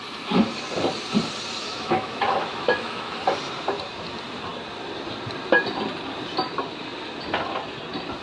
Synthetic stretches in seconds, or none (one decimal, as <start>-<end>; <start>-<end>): 1.6-3.2